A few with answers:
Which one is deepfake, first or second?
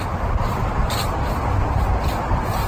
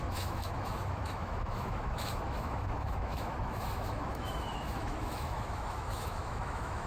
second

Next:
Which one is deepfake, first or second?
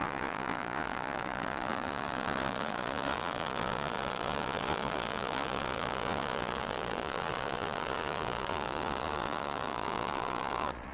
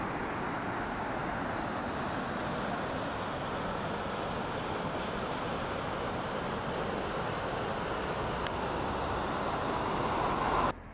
first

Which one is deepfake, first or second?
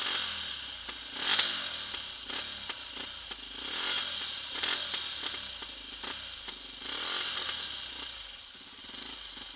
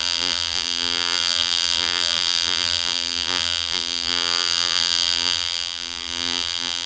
second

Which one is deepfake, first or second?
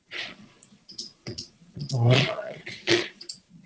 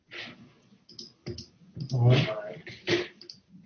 first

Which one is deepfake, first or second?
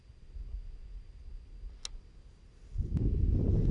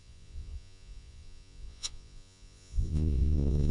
second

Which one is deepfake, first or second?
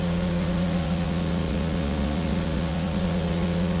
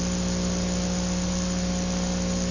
first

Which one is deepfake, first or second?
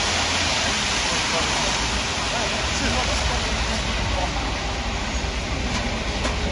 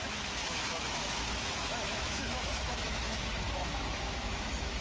second